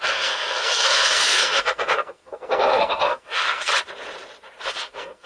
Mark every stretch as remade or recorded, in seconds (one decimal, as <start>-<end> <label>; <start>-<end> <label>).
0.0-3.7 remade; 3.7-4.8 recorded; 4.8-5.3 remade